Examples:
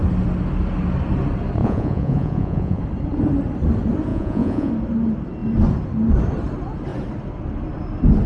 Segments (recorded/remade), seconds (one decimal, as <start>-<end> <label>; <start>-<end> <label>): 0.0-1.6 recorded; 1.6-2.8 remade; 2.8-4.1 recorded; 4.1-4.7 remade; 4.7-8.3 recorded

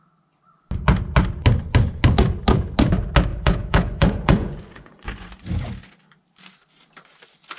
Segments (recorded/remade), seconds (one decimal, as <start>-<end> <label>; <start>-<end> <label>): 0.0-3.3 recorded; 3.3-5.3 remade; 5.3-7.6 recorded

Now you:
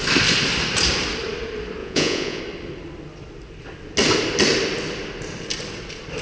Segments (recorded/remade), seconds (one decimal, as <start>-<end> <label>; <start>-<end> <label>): 0.0-1.8 recorded; 1.8-2.4 remade; 2.4-6.2 recorded

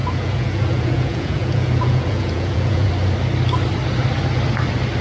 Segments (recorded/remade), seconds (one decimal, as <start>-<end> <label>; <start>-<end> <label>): 0.0-2.9 remade; 2.9-5.0 recorded

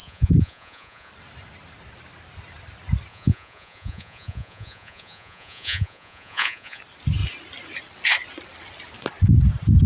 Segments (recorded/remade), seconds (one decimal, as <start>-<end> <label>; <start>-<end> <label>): 0.0-1.1 remade; 1.1-3.1 recorded; 3.1-6.8 remade; 6.8-9.9 recorded

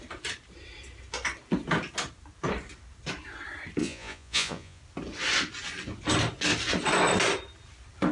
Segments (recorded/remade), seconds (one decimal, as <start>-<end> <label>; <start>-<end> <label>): 0.0-3.8 recorded; 3.8-4.8 remade; 4.8-8.1 recorded